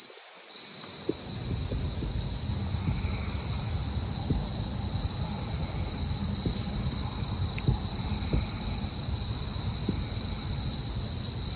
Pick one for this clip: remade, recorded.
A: recorded